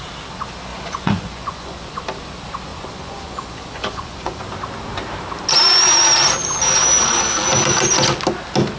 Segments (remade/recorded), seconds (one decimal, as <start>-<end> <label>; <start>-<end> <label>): 0.0-0.7 recorded; 0.7-1.9 remade; 1.9-2.7 recorded; 2.7-4.4 remade; 4.4-8.8 recorded